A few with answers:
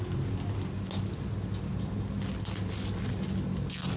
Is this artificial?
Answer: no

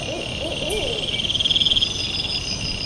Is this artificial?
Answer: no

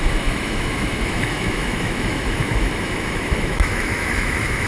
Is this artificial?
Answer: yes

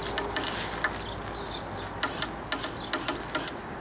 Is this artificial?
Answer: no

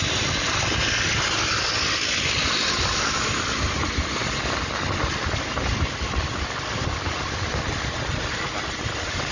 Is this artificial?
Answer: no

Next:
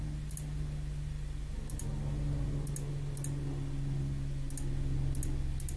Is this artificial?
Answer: no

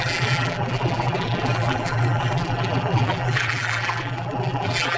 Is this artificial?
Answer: yes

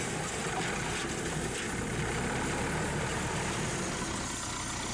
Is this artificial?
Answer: no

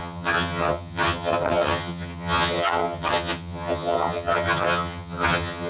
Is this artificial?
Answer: yes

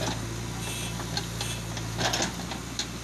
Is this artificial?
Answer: no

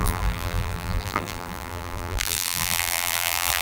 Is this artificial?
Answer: yes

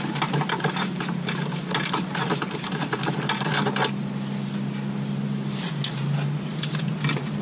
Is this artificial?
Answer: no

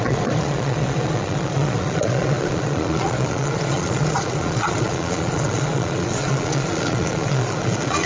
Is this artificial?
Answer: yes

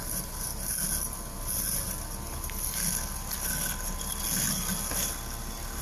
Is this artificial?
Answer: no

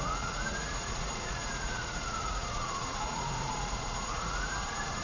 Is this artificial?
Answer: yes